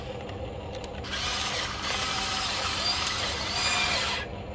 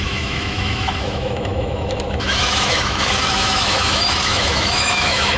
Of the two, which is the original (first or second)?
first